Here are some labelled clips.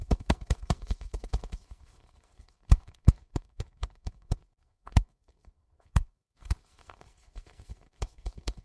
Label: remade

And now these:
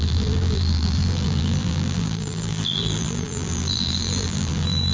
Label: remade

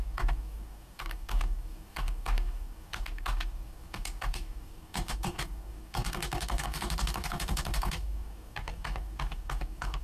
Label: remade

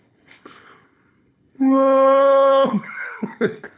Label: remade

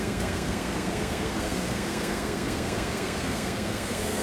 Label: remade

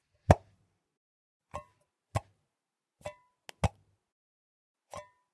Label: recorded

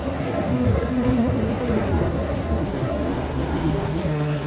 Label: remade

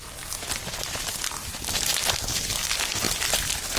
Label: recorded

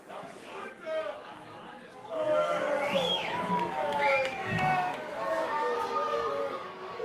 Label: remade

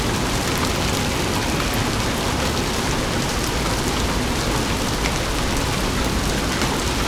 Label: recorded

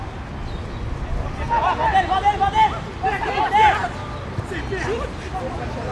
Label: recorded